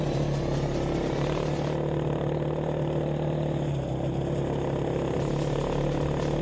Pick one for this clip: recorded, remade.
recorded